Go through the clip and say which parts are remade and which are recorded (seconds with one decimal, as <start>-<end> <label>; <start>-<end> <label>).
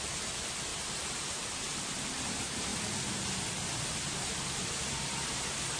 0.0-2.7 recorded; 2.7-5.8 remade